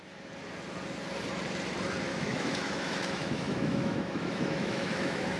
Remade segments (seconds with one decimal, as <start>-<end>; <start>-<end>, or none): 2.1-5.4